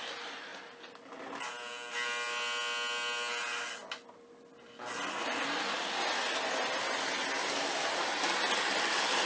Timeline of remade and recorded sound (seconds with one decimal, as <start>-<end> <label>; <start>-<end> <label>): 0.0-9.3 recorded